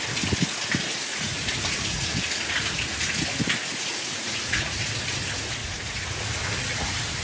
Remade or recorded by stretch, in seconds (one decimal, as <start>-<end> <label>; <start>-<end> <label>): 0.0-1.1 recorded; 1.1-2.8 remade; 2.8-3.6 recorded; 3.6-4.8 remade; 4.8-5.6 recorded; 5.6-6.2 remade; 6.2-7.2 recorded